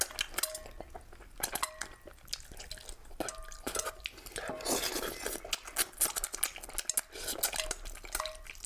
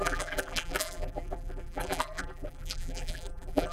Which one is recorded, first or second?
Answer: first